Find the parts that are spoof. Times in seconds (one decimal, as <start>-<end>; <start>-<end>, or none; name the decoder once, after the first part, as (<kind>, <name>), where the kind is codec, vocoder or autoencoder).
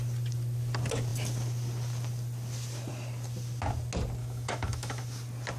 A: 4.2-5.0 (autoencoder, DAC-VAE)